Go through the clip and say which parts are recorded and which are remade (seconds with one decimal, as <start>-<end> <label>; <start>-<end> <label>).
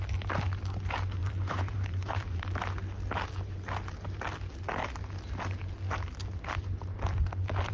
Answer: 0.0-1.2 recorded; 1.2-2.4 remade; 2.4-7.7 recorded